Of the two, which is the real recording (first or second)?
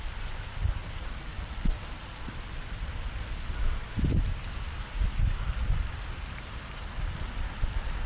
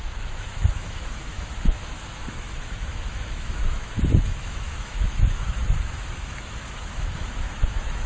first